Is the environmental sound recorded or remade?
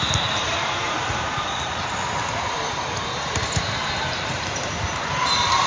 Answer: remade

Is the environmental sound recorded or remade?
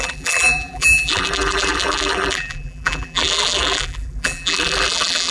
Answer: remade